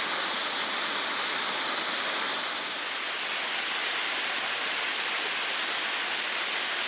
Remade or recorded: recorded